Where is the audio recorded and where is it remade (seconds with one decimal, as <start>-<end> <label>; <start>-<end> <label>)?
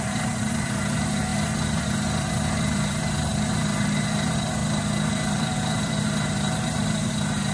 0.0-4.6 remade; 4.6-5.1 recorded; 5.1-7.5 remade